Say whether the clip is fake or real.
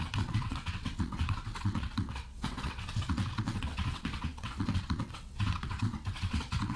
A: fake